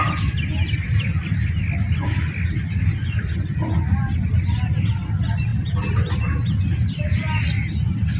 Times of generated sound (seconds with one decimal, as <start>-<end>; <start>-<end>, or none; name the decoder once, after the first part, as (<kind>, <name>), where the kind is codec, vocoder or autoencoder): none